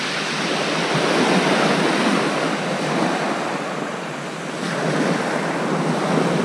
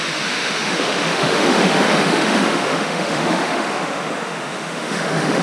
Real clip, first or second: first